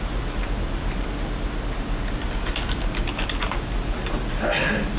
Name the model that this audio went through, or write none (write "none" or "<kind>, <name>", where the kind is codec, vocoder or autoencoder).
none